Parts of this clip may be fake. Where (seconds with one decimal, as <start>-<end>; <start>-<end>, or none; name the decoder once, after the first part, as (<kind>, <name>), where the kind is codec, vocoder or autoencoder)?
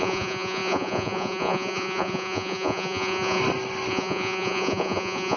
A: 0.0-3.4 (vocoder, Vocos); 3.9-5.4